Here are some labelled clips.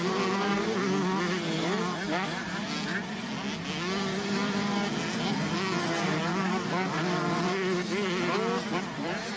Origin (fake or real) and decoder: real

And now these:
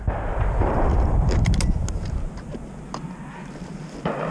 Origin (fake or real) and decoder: real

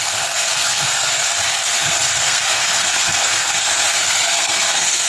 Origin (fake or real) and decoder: fake, codec, SNAC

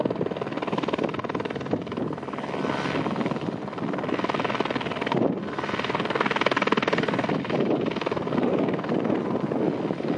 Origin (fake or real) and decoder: real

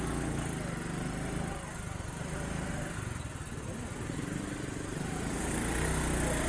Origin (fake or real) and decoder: real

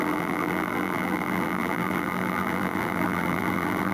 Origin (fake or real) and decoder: fake, vocoder, BigVGAN v2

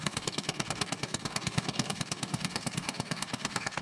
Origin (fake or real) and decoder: fake, codec, DAC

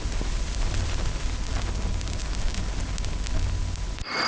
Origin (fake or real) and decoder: fake, vocoder, BigVGAN v2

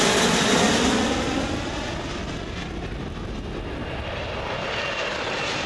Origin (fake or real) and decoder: real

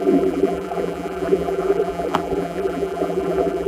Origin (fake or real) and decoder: fake, vocoder, BigVGAN v2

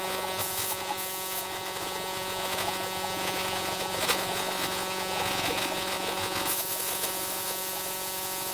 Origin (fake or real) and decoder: fake, vocoder, Vocos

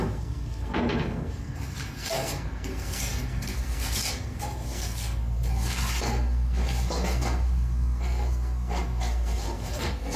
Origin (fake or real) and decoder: fake, codec, SNAC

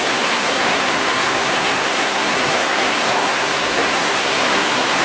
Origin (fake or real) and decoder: fake, codec, SNAC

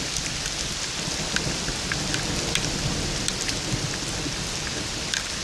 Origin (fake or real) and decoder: real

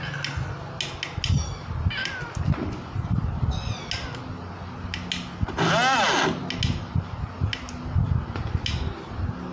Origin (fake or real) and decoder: real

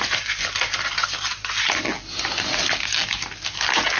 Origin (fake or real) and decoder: real